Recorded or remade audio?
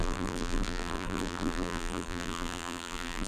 remade